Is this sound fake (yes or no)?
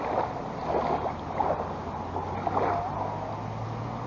no